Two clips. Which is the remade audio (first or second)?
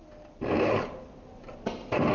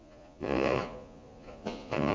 second